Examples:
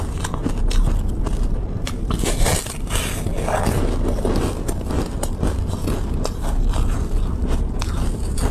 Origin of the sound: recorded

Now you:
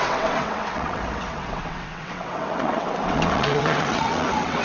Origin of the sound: remade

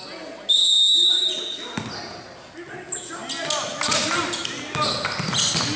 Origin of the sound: recorded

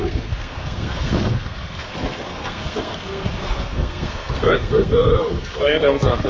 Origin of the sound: remade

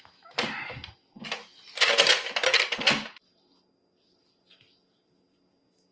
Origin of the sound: recorded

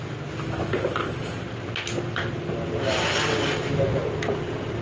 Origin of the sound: recorded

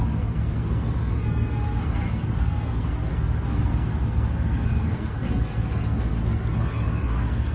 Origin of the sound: remade